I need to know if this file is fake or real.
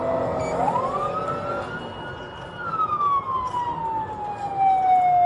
real